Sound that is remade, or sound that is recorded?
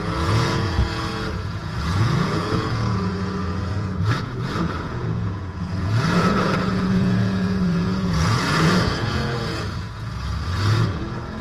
remade